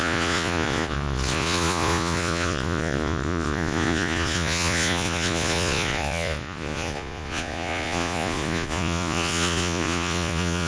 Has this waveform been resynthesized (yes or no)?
yes